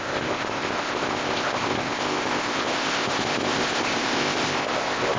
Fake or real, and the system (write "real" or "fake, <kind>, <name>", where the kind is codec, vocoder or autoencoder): fake, codec, ZipCodec